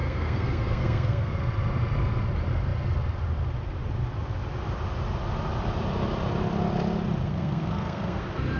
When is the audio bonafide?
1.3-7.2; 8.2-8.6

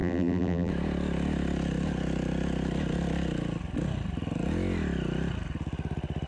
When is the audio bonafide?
0.7-6.3

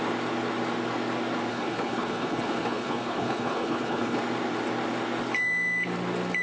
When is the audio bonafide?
0.0-1.5; 4.2-6.4

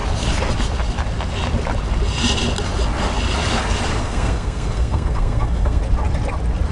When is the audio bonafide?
0.0-4.0; 5.8-6.7

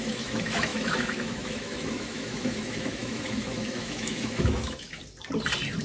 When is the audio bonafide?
5.0-5.8

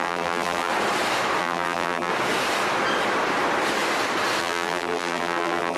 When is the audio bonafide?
0.7-1.4; 2.1-4.4

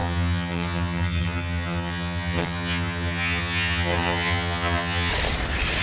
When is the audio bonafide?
5.1-5.8